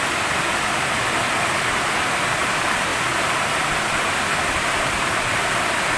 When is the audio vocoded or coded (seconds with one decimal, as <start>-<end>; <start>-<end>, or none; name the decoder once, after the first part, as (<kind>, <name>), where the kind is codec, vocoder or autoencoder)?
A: none